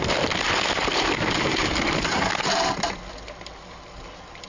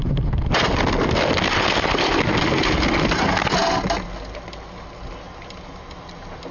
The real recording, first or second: second